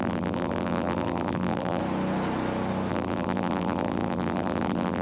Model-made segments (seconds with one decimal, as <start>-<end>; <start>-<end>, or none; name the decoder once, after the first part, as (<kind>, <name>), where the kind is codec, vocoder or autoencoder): 0.0-1.8 (vocoder, BigVGAN v2); 2.9-5.0